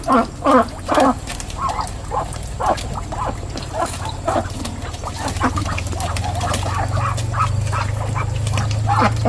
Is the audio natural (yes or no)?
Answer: yes